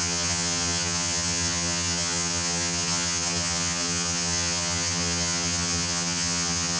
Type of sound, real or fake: fake